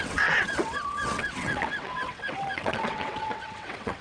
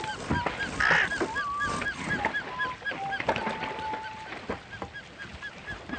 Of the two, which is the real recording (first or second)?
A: second